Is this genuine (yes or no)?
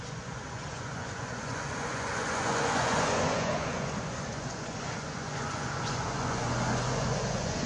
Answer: no